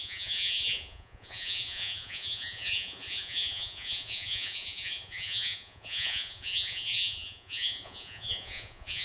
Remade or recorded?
remade